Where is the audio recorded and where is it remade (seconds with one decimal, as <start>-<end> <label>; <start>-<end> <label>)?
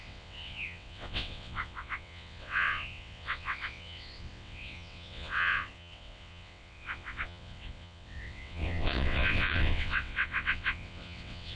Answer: 0.0-11.6 remade